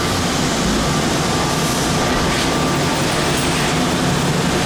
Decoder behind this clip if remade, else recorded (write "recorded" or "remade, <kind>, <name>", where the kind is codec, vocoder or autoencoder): recorded